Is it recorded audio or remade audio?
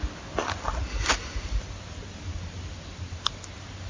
recorded